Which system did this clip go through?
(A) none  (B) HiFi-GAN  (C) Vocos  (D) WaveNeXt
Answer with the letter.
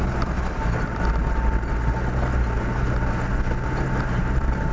A